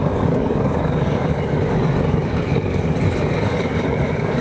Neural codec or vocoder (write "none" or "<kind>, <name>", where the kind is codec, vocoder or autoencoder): codec, DAC